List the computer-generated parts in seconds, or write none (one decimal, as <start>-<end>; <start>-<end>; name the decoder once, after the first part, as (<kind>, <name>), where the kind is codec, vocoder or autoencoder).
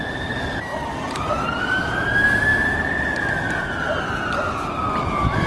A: none